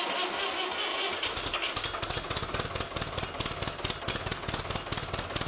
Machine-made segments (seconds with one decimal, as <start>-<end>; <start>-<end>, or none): none